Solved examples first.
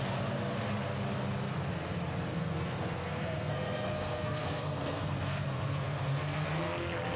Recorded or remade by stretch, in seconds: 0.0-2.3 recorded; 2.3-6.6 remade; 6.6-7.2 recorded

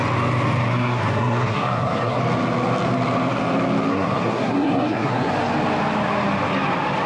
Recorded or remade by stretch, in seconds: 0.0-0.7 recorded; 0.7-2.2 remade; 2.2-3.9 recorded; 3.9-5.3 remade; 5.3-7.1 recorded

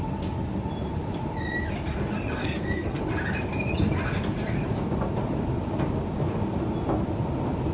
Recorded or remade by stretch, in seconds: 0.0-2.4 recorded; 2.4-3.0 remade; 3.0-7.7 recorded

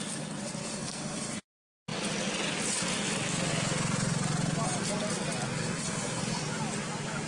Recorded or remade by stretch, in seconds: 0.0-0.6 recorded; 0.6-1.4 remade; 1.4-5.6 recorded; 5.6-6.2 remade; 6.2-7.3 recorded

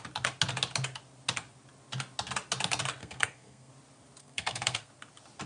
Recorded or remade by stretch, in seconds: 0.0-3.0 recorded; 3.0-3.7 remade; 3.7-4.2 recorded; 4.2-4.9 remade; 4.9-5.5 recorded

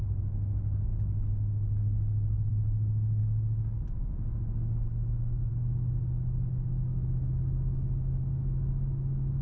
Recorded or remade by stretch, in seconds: 0.0-9.4 recorded

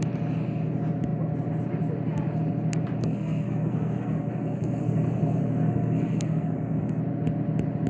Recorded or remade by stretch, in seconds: 0.0-3.0 recorded; 3.0-7.0 remade; 7.0-7.9 recorded

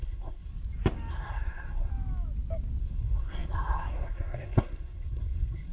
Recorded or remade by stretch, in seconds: 0.0-0.5 remade; 0.5-1.1 recorded; 1.1-1.9 remade; 1.9-2.8 recorded; 2.8-5.7 remade